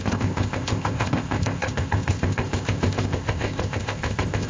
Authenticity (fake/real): fake